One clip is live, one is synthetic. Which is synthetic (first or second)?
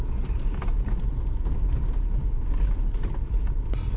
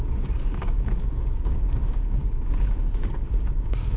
second